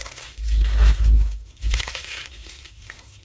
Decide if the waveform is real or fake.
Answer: fake